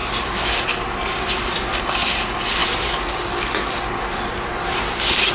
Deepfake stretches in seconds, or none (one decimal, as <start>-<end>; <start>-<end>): none